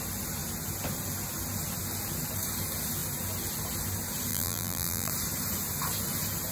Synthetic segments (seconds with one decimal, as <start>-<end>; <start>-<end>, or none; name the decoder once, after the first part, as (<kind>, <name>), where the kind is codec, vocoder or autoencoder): 4.3-5.1 (vocoder, BigVGAN v2)